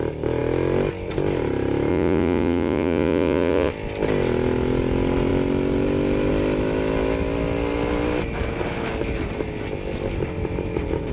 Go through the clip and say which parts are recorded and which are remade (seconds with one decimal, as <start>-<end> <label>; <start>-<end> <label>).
0.0-1.9 recorded; 1.9-3.7 remade; 3.7-11.1 recorded